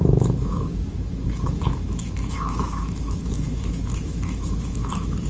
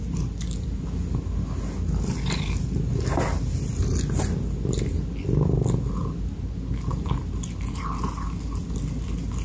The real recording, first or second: second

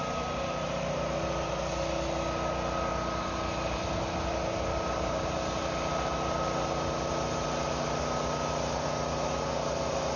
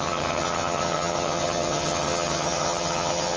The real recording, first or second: first